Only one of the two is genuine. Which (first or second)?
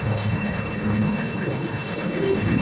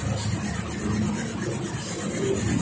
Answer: second